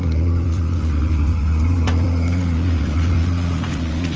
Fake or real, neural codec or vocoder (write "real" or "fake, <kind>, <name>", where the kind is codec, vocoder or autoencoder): fake, vocoder, Vocos